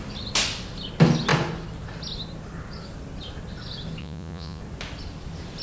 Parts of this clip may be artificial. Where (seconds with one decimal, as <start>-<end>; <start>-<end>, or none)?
4.0-4.6